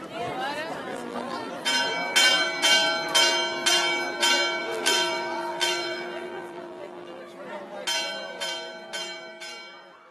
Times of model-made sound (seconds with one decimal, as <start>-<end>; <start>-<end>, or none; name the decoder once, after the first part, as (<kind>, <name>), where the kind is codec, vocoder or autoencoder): 0.9-1.5 (vocoder, BigVGAN v2); 4.6-7.2